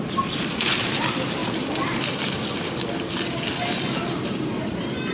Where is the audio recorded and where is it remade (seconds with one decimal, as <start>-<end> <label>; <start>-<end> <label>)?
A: 0.0-5.1 recorded